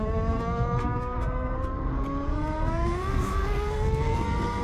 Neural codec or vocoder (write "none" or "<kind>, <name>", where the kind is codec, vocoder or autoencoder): codec, SNAC